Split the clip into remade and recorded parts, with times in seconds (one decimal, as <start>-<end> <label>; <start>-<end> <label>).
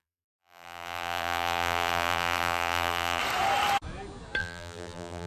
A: 0.0-3.2 remade; 3.2-4.4 recorded; 4.4-5.3 remade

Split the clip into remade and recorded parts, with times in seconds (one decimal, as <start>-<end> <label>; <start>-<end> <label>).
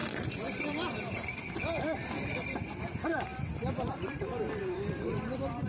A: 0.0-5.7 remade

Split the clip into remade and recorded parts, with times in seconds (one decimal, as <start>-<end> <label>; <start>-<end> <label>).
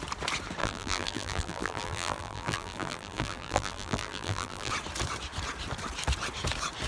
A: 0.0-0.6 recorded; 0.6-4.7 remade; 4.7-6.9 recorded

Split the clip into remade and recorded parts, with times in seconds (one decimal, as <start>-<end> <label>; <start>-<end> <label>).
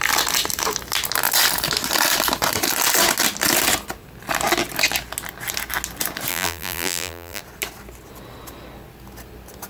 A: 0.0-6.3 recorded; 6.3-7.4 remade; 7.4-9.7 recorded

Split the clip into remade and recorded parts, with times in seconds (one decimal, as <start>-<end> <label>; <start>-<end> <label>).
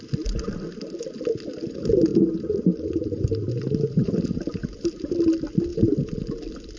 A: 0.0-2.1 recorded; 2.1-5.1 remade; 5.1-5.7 recorded; 5.7-6.2 remade; 6.2-6.8 recorded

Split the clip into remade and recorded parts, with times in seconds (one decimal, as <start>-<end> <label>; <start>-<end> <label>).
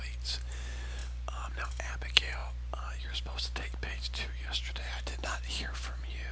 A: 0.0-1.0 recorded; 1.0-1.7 remade; 1.7-2.4 recorded; 2.4-6.3 remade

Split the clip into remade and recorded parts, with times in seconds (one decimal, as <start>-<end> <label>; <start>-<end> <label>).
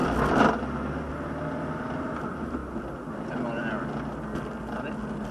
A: 0.0-5.3 recorded